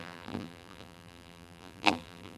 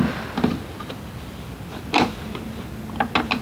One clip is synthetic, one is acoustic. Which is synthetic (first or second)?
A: first